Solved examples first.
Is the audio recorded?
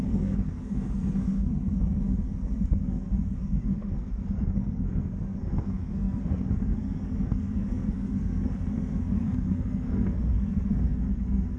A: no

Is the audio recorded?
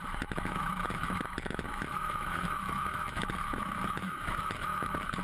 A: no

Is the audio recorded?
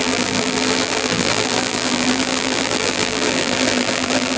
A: no